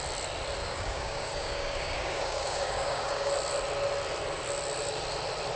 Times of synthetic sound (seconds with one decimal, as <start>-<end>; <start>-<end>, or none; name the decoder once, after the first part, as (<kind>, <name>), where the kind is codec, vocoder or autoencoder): 0.6-3.3 (codec, DAC)